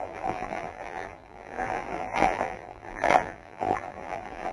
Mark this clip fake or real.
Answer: fake